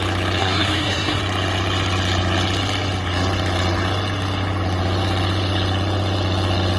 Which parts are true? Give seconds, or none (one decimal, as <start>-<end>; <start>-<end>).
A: 0.0-0.4; 1.2-6.8